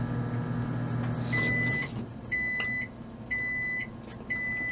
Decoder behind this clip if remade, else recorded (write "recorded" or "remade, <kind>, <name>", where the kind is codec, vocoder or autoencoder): recorded